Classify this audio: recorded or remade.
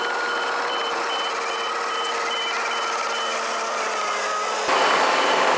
recorded